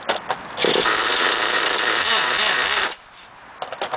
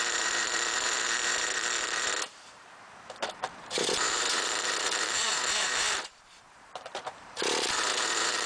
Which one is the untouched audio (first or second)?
first